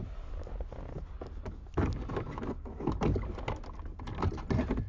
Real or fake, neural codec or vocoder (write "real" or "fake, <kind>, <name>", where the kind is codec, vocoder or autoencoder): real